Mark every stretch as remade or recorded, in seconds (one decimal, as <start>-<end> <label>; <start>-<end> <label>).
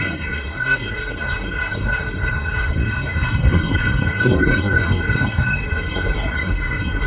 0.0-7.1 remade